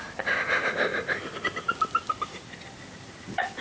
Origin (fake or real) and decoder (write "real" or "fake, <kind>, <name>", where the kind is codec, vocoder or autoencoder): real